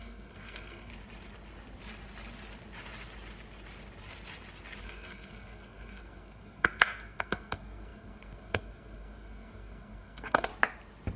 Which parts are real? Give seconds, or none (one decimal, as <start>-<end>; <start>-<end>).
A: 0.9-4.8; 10.5-11.2